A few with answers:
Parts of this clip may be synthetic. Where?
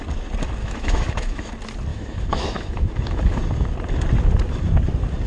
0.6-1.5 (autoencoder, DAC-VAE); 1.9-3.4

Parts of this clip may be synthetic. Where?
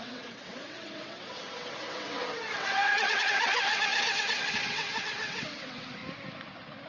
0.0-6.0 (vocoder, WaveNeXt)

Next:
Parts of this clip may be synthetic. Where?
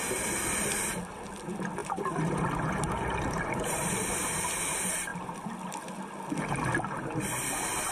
1.8-4.2 (vocoder, BigVGAN v2)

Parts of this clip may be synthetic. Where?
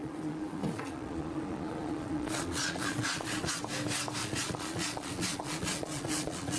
0.0-3.6 (vocoder, Vocos); 4.2-6.6